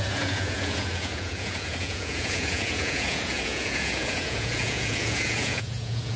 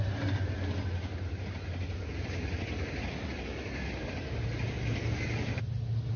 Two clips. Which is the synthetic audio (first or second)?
first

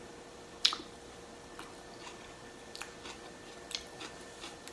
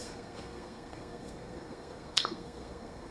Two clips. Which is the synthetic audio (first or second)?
second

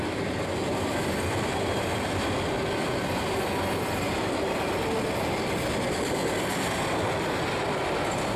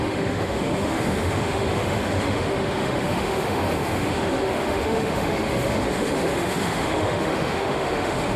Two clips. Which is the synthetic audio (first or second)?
second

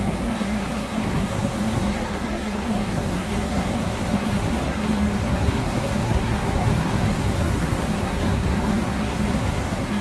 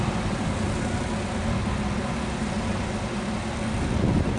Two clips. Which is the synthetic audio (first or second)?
first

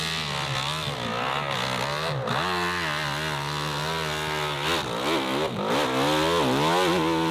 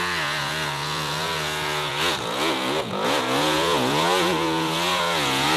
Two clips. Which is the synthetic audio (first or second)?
second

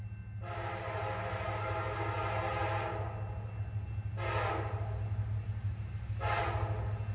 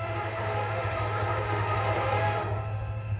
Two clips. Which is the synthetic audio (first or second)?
second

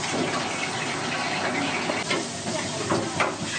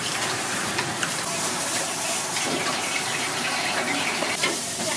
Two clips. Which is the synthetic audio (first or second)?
second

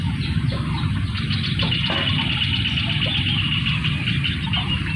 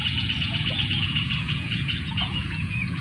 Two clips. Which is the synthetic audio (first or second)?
second